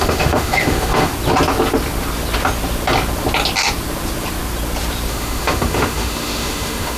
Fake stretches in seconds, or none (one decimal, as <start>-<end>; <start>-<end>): 0.0-1.1; 5.1-7.0